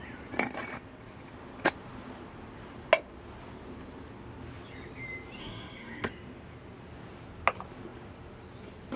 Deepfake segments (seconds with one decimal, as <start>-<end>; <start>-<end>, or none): 5.4-6.1